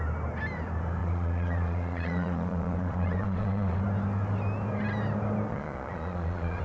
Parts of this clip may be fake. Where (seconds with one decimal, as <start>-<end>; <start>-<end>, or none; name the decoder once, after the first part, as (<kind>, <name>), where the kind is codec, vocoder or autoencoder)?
1.0-3.8 (vocoder, Vocos); 5.5-6.6

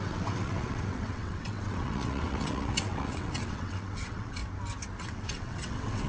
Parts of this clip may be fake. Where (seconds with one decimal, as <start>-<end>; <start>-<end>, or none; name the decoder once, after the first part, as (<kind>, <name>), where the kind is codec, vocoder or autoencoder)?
0.0-4.4 (vocoder, WaveNeXt); 5.0-6.1

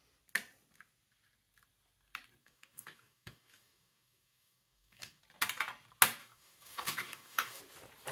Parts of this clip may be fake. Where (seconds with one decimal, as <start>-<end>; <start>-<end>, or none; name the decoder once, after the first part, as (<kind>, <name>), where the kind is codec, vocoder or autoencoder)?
2.4-5.2 (codec, DAC); 6.2-7.6

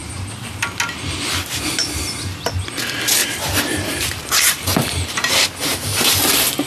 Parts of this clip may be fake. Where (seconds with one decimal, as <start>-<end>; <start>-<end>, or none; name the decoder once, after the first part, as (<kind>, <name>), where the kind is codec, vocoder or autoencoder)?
0.0-0.5 (vocoder, BigVGAN v2); 3.2-6.2

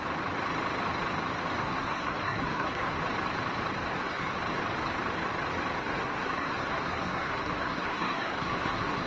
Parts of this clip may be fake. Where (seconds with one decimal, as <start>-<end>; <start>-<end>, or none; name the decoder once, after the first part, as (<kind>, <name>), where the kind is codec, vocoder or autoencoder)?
1.6-3.0 (codec, SNAC); 3.9-4.4; 5.8-9.1

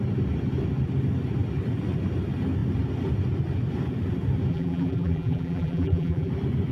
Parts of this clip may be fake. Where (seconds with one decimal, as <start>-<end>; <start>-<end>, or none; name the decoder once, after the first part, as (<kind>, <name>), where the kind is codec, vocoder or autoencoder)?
4.5-6.3 (vocoder, BigVGAN v2)